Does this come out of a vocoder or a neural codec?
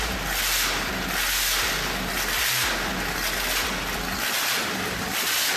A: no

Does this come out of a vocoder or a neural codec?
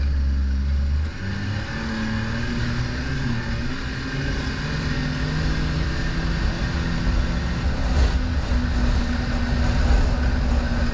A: no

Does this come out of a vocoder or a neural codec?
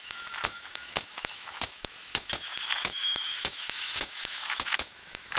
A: yes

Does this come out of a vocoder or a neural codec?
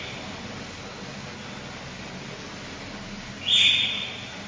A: no